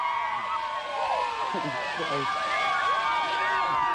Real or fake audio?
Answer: real